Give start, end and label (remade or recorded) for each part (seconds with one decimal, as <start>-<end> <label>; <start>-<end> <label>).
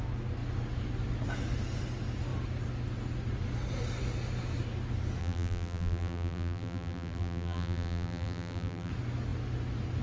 0.0-5.2 recorded; 5.2-8.9 remade; 8.9-10.0 recorded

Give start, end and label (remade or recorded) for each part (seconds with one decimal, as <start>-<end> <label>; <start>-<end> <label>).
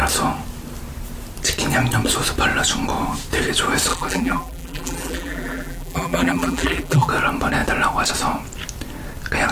0.0-3.9 recorded; 3.9-7.1 remade; 7.1-9.5 recorded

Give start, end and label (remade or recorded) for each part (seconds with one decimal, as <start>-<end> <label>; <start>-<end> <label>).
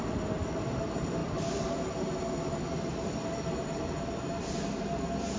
0.0-5.4 recorded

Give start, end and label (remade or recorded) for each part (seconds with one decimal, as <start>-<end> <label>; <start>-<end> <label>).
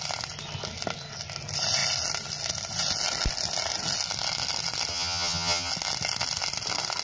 0.0-4.9 recorded; 4.9-5.7 remade; 5.7-7.0 recorded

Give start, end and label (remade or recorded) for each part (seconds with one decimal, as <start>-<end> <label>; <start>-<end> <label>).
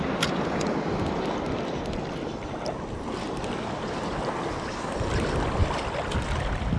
0.0-6.8 recorded